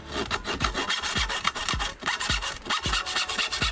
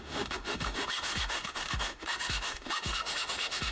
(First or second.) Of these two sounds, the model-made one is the second